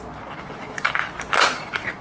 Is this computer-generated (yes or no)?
no